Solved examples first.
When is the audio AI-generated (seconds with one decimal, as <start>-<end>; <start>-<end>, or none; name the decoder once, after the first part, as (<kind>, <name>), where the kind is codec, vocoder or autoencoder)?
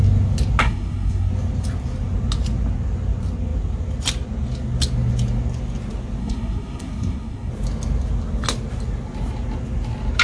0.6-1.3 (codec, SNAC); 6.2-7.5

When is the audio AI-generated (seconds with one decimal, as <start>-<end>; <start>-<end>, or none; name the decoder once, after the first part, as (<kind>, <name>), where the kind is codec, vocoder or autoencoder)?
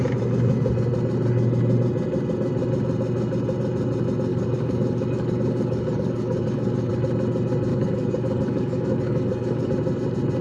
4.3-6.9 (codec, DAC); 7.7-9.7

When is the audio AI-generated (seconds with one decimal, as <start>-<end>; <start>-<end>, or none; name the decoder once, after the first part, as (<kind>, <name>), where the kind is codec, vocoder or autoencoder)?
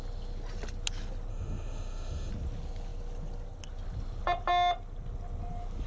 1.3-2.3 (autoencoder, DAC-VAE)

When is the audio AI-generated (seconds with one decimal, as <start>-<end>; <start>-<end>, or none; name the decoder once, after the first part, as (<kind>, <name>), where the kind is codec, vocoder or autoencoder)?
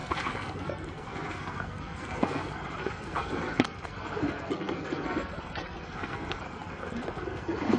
0.0-7.8 (codec, SNAC)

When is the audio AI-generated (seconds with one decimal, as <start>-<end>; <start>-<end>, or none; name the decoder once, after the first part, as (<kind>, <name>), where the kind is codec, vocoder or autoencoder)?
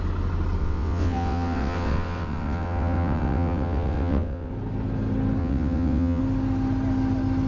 0.6-4.5 (vocoder, WaveNeXt); 5.4-6.2